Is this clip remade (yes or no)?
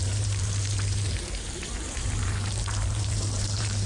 yes